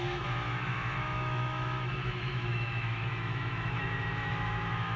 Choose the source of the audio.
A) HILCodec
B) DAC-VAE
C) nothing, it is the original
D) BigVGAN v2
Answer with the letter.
B